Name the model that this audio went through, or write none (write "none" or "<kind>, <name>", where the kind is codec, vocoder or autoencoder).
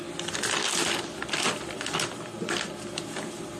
none